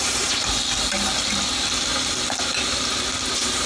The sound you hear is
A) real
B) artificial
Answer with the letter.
A